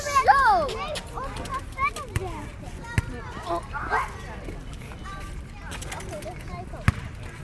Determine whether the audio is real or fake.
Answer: real